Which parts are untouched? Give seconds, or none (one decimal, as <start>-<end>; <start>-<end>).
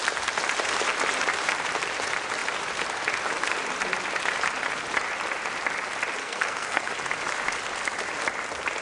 0.0-6.2; 6.9-8.8